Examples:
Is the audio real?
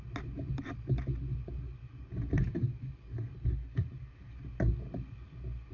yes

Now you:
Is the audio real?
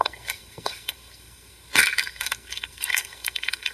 no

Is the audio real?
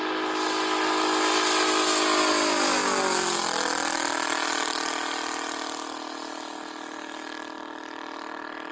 yes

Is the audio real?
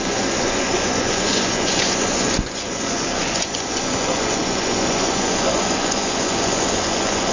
no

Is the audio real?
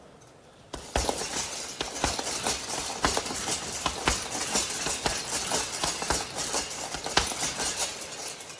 yes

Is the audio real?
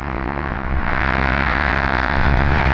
no